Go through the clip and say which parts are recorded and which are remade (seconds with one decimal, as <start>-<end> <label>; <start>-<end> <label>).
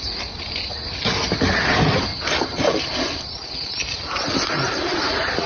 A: 0.0-5.5 recorded